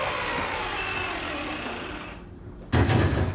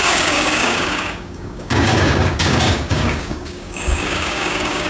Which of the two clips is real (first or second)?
first